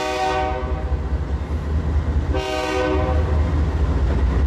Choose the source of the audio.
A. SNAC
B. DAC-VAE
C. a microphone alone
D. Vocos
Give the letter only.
C